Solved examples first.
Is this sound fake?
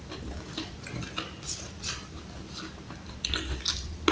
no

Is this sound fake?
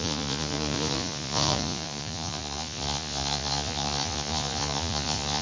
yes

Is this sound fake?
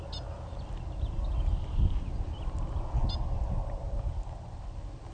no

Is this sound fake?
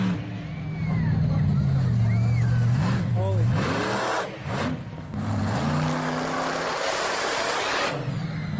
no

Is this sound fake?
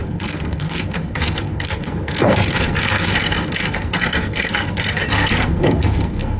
yes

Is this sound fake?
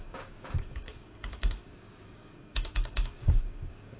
yes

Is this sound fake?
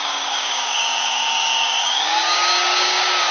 yes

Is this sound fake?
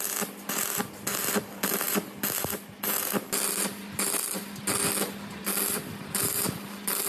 no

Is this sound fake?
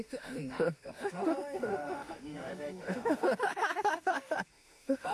yes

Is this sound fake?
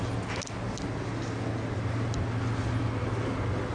no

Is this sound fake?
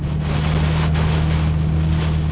no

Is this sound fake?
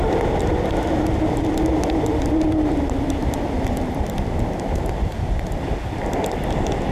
no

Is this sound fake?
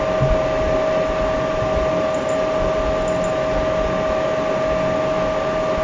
no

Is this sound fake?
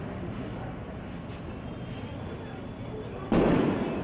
no